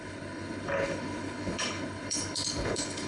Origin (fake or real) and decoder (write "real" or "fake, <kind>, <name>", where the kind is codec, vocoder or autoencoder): fake, codec, HILCodec